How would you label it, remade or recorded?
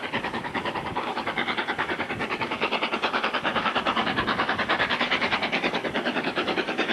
remade